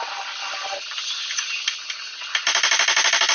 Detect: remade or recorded recorded